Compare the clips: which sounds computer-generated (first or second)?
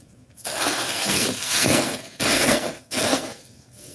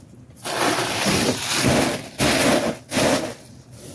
first